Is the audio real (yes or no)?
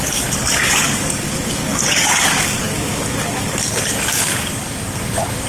no